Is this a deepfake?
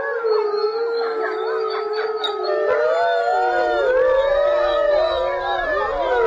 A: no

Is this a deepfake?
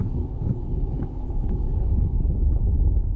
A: yes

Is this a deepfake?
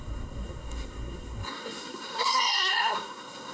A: yes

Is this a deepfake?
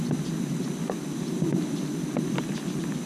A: no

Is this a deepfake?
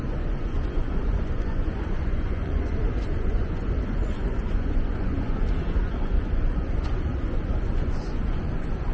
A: yes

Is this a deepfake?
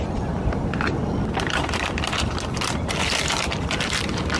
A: yes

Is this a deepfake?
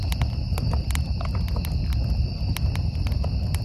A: no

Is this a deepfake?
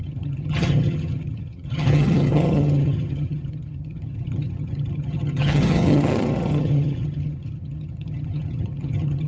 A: yes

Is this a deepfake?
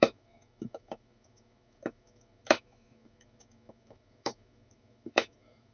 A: yes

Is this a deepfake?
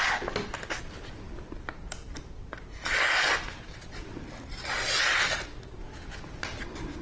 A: no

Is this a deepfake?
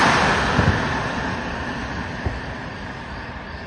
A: no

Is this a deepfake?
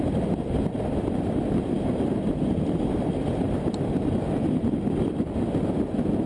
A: no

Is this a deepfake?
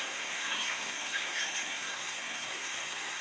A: yes